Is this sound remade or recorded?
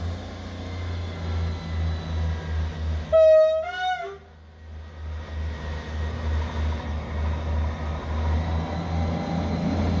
recorded